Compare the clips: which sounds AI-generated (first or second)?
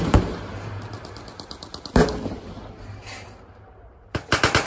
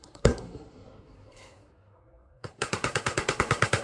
second